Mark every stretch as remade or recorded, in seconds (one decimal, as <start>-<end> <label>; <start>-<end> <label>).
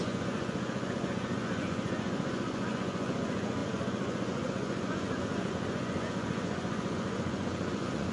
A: 0.0-8.1 remade